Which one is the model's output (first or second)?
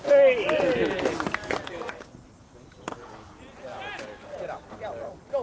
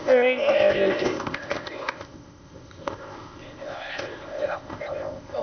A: second